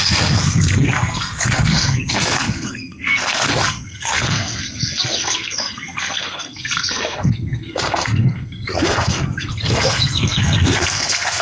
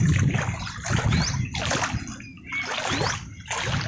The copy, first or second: first